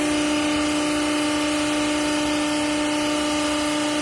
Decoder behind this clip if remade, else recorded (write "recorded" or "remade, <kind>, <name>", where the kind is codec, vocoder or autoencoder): recorded